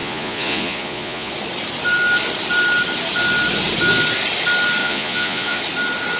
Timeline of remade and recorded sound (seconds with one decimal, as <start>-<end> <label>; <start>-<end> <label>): 0.0-1.3 remade; 1.3-4.8 recorded; 4.8-5.6 remade; 5.6-6.2 recorded